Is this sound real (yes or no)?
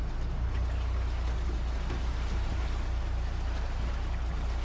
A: yes